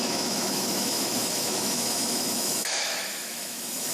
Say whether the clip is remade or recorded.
remade